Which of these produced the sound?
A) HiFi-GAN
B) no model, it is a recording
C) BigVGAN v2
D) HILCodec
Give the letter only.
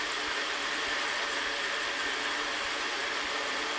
C